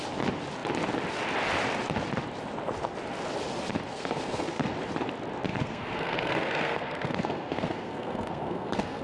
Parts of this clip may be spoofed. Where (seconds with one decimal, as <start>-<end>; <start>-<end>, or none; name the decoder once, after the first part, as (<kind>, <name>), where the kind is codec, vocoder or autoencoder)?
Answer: 3.9-4.7 (codec, SNAC); 5.5-9.0